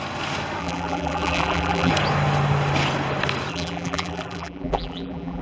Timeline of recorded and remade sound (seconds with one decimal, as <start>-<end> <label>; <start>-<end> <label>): 0.0-0.6 recorded; 0.6-1.9 remade; 1.9-3.5 recorded; 3.5-5.4 remade